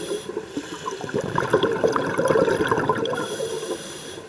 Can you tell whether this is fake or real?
fake